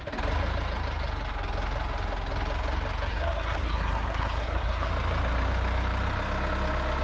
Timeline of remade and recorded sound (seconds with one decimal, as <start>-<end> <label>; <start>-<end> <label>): 0.0-3.1 recorded; 3.1-4.9 remade; 4.9-7.0 recorded